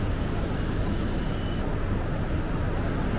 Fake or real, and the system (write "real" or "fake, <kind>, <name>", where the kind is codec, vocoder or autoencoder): real